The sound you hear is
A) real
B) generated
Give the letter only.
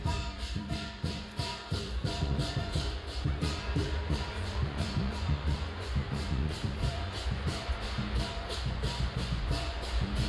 B